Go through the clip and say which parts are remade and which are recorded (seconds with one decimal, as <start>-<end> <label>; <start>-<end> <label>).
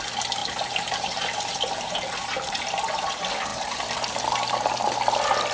0.0-0.4 recorded; 0.4-2.6 remade; 2.6-3.5 recorded; 3.5-4.2 remade; 4.2-5.5 recorded